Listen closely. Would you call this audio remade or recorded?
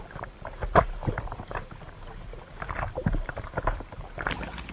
remade